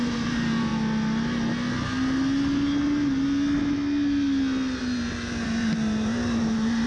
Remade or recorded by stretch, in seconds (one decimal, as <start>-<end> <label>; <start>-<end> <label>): 0.0-0.7 remade; 0.7-4.8 recorded; 4.8-6.9 remade